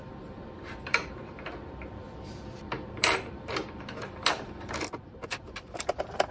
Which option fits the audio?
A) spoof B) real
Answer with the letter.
A